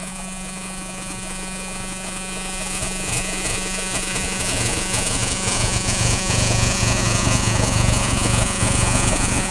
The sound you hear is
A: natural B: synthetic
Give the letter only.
B